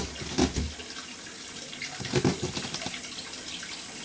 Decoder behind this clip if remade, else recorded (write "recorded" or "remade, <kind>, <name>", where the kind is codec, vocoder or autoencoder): recorded